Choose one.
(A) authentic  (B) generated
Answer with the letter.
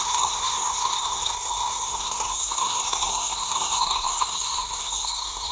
B